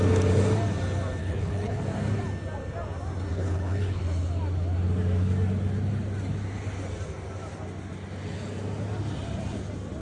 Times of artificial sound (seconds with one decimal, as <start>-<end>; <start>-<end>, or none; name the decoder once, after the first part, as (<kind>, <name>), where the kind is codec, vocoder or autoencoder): 1.2-1.8 (codec, HILCodec); 3.3-4.0